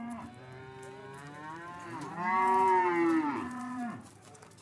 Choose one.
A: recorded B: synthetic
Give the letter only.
B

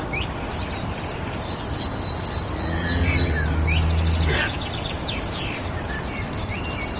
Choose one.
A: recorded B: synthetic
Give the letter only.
A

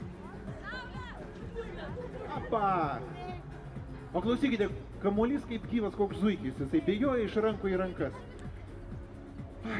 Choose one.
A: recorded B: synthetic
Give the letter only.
A